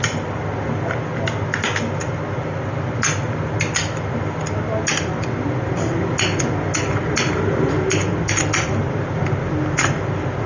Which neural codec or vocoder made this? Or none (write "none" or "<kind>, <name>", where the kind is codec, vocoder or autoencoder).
none